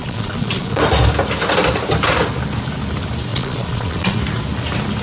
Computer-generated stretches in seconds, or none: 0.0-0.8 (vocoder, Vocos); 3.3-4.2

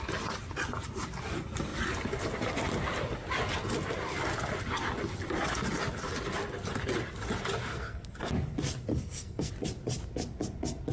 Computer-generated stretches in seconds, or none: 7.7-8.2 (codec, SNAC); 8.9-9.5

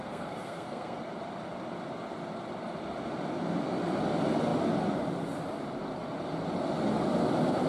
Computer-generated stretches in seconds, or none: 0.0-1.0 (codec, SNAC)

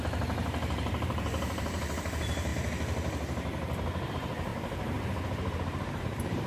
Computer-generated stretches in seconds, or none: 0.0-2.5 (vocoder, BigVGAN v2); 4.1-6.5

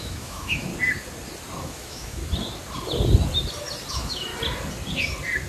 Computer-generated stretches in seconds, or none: 0.0-0.7 (autoencoder, DAC-VAE); 1.6-2.2; 3.9-4.3

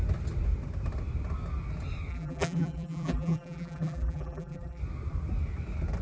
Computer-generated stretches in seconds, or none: 2.1-4.8 (vocoder, BigVGAN v2)